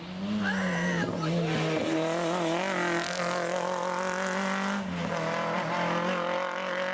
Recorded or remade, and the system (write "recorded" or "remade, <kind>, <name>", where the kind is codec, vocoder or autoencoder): recorded